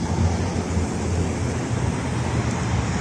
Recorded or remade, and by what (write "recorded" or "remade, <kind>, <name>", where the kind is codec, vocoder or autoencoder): recorded